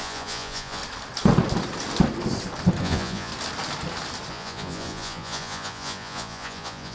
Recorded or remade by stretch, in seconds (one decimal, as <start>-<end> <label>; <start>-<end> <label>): 0.0-0.8 remade; 0.8-2.8 recorded; 2.8-3.3 remade; 3.3-4.3 recorded; 4.3-6.9 remade